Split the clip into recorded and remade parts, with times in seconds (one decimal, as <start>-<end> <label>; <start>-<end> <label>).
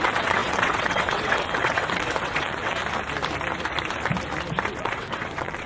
0.0-2.8 remade; 2.8-4.8 recorded; 4.8-5.7 remade